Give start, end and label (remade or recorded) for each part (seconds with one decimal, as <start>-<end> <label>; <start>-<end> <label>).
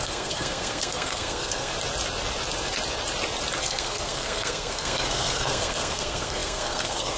0.0-1.7 remade; 1.7-3.6 recorded; 3.6-7.2 remade